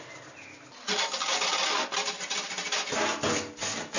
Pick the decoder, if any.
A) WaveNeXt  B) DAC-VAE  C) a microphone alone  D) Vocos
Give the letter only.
C